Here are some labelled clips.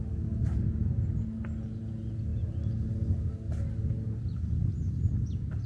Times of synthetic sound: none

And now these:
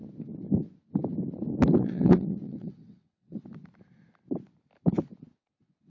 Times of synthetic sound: 1.8-3.4 (vocoder, WaveNeXt); 5.4-5.9